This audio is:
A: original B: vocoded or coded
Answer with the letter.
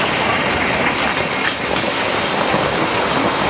A